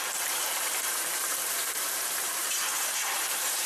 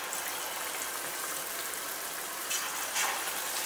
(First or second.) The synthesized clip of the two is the first